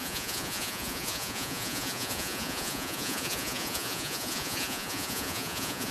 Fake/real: fake